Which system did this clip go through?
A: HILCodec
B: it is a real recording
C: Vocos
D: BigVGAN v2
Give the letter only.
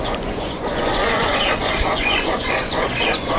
C